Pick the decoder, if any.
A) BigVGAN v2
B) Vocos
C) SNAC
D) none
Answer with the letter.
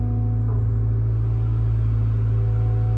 D